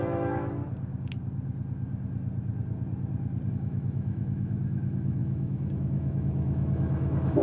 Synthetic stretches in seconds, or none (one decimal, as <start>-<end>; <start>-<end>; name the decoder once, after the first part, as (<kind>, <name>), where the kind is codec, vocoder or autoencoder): 0.0-0.6 (autoencoder, DAC-VAE); 3.5-7.4